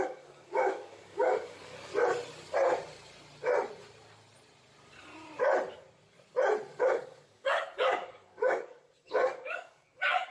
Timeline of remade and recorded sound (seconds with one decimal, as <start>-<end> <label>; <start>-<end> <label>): 0.0-1.9 remade; 1.9-6.8 recorded; 6.8-10.3 remade